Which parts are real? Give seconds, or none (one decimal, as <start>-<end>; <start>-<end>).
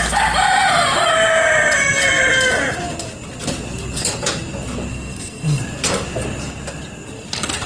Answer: 0.0-4.9; 5.6-7.7